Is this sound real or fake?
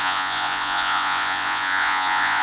fake